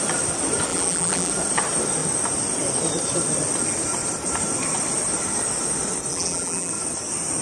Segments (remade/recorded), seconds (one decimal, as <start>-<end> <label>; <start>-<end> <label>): 0.0-0.7 recorded; 0.7-1.3 remade; 1.3-6.1 recorded; 6.1-6.7 remade; 6.7-7.4 recorded